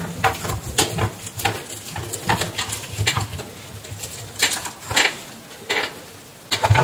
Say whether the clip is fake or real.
real